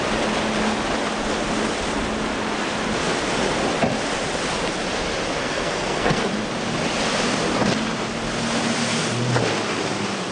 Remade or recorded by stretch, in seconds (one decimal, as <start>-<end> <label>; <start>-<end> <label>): 0.0-5.4 recorded; 5.4-6.3 remade; 6.3-10.3 recorded